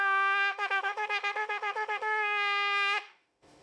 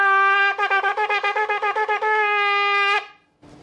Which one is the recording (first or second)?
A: second